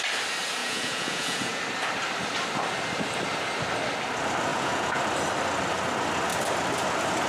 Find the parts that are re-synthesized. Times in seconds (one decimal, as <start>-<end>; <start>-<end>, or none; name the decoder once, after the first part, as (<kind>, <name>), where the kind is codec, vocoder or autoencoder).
0.6-1.6 (vocoder, Vocos); 4.5-5.0